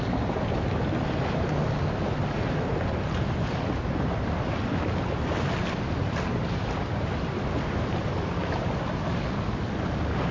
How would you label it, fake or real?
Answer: real